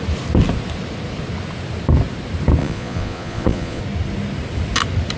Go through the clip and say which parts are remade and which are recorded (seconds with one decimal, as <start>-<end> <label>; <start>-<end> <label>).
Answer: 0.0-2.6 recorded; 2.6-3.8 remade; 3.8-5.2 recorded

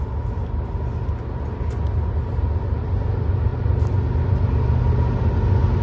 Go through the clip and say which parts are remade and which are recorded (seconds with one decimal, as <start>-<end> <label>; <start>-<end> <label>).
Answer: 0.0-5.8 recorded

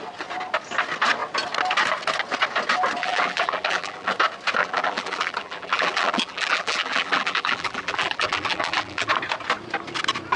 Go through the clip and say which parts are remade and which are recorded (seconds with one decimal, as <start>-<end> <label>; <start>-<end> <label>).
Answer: 0.0-3.0 recorded; 3.0-4.1 remade; 4.1-4.6 recorded; 4.6-9.1 remade; 9.1-10.4 recorded

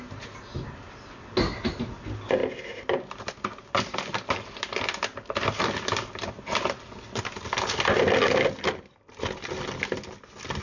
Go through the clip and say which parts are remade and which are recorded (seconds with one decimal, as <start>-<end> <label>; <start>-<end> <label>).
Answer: 0.0-10.6 recorded

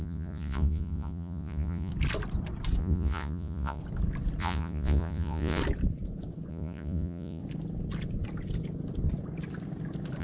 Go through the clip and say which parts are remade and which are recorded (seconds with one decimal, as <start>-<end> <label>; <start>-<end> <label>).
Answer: 0.0-1.9 remade; 1.9-2.8 recorded; 2.8-3.8 remade; 3.8-4.4 recorded; 4.4-5.6 remade; 5.6-6.5 recorded; 6.5-7.4 remade; 7.4-10.2 recorded